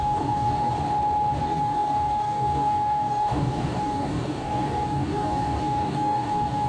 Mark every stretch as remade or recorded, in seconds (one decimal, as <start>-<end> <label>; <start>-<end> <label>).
0.0-0.7 remade; 0.7-1.4 recorded; 1.4-6.7 remade